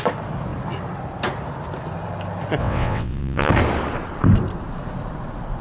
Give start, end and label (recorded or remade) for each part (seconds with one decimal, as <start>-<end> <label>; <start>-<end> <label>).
0.0-2.6 recorded; 2.6-3.5 remade; 3.5-5.6 recorded